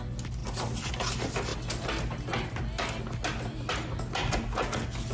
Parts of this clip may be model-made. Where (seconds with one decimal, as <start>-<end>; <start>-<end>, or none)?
none

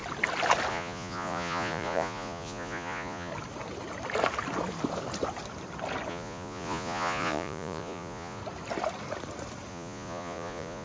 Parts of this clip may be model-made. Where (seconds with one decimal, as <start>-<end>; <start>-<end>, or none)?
0.7-3.3; 6.1-8.4; 9.7-10.8

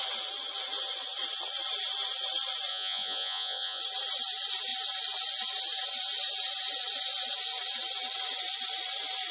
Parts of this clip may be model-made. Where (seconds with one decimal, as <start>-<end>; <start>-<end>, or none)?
2.7-3.8